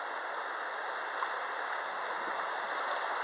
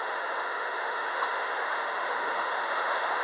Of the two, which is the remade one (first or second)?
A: second